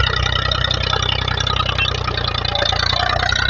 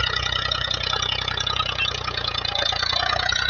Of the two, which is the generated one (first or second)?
second